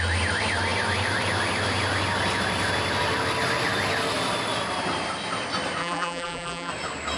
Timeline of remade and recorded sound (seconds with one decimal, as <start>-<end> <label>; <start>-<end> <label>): 0.0-5.8 recorded; 5.8-6.7 remade; 6.7-7.2 recorded

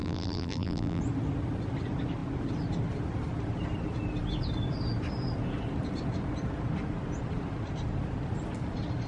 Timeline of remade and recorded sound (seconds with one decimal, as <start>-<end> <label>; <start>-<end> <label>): 0.0-1.0 remade; 1.0-9.1 recorded